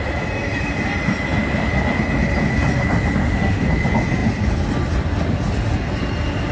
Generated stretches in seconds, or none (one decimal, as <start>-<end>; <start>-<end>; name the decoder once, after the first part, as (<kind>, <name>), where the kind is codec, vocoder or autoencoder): 3.2-3.7 (autoencoder, DAC-VAE)